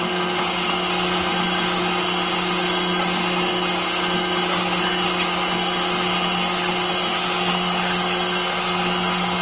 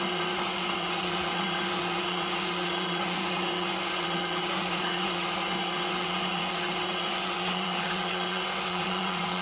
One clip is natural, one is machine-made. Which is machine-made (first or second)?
second